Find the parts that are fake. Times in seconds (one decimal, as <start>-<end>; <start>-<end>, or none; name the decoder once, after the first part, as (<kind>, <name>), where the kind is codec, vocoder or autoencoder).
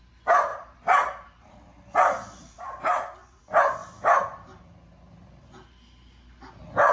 0.5-3.4 (vocoder, BigVGAN v2); 3.8-4.8